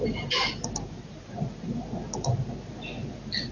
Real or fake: real